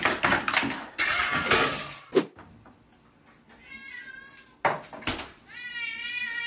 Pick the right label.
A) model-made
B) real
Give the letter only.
B